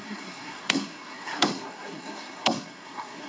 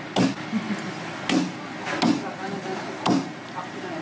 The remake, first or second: first